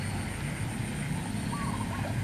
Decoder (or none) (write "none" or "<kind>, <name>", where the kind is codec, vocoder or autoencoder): none